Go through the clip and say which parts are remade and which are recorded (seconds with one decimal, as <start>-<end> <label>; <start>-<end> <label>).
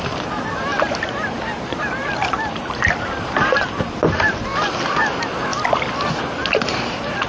0.0-4.5 remade; 4.5-6.5 recorded; 6.5-7.3 remade